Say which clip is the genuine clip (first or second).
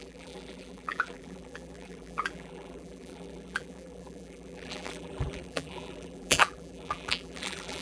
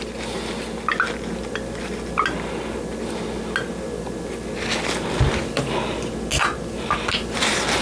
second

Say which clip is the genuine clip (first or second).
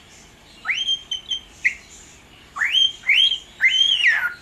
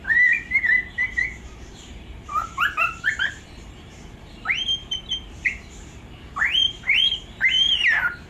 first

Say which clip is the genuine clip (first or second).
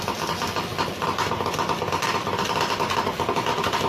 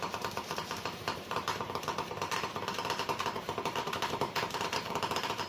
first